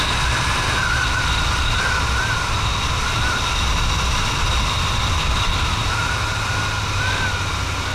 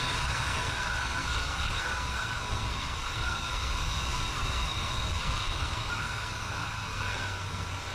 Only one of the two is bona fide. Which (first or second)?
first